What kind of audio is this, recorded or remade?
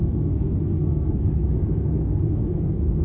remade